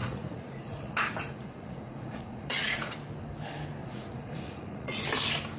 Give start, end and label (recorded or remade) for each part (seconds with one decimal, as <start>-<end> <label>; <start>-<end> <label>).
0.0-2.9 remade; 2.9-3.8 recorded; 3.8-5.0 remade; 5.0-5.6 recorded